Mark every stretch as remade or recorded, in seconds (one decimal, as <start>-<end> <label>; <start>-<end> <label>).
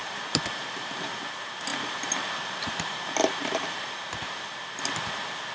0.0-1.2 remade; 1.2-1.7 recorded; 1.7-4.5 remade; 4.5-5.5 recorded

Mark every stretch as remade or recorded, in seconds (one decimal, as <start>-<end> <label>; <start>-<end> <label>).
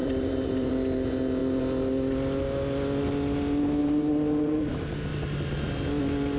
0.0-0.7 remade; 0.7-3.8 recorded; 3.8-4.6 remade; 4.6-6.4 recorded